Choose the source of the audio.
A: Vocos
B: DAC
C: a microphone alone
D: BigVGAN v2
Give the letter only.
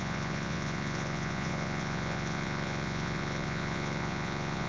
A